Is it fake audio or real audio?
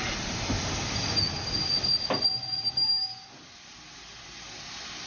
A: real